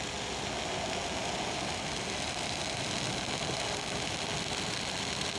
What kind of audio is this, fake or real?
real